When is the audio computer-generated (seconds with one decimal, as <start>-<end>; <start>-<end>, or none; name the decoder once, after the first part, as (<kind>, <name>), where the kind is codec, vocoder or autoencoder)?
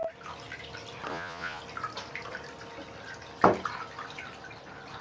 1.1-1.6 (vocoder, Vocos)